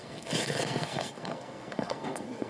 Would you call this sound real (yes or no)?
no